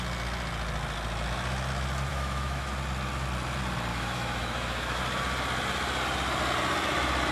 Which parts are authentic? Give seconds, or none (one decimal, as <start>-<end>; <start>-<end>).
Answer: 0.0-2.1; 2.7-3.9; 5.0-7.3